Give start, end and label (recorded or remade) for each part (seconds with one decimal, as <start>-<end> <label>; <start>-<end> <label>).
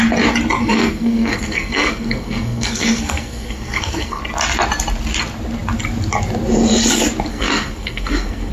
0.0-0.6 recorded; 0.6-4.2 remade; 4.2-7.3 recorded; 7.3-8.5 remade